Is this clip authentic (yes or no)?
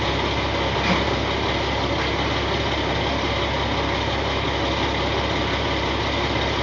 yes